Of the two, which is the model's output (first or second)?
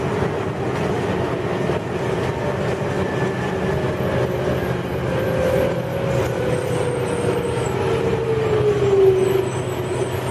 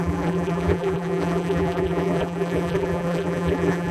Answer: second